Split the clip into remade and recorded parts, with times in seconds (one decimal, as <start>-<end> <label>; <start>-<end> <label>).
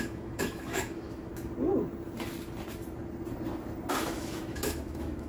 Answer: 0.0-1.3 remade; 1.3-4.0 recorded; 4.0-5.3 remade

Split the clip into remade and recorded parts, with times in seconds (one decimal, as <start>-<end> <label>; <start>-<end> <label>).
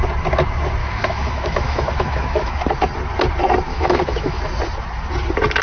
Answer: 0.0-0.8 recorded; 0.8-2.6 remade; 2.6-3.7 recorded; 3.7-4.4 remade; 4.4-5.6 recorded